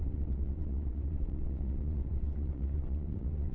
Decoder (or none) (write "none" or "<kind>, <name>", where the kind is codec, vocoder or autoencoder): vocoder, WaveNeXt